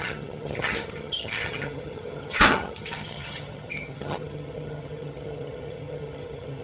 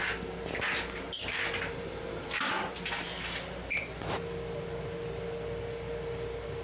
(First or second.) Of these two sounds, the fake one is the first